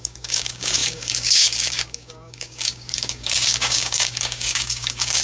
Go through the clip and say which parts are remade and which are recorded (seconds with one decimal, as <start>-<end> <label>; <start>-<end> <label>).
0.0-5.2 remade